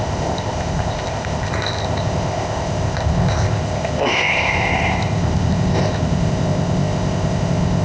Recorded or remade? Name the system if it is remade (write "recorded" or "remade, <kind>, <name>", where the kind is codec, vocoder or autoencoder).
remade, codec, ZipCodec